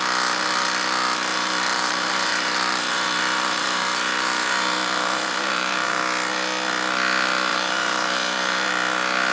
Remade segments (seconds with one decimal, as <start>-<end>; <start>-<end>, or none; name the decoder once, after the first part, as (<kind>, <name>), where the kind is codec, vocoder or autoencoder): 1.3-6.0 (vocoder, BigVGAN v2); 7.5-8.7